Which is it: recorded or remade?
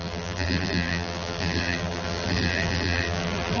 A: remade